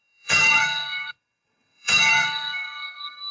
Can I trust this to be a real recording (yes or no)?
no